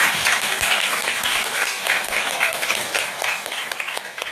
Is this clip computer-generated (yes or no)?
yes